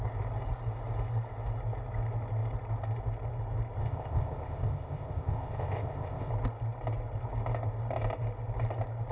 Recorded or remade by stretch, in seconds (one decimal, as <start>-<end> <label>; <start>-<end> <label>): 0.0-3.8 recorded; 3.8-6.3 remade; 6.3-9.1 recorded